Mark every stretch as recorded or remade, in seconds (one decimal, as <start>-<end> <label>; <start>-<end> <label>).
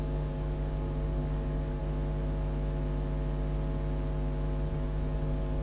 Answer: 0.0-1.8 remade; 1.8-4.7 recorded; 4.7-5.6 remade